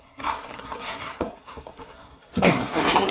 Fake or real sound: fake